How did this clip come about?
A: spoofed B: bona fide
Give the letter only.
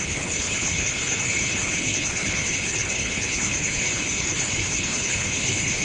A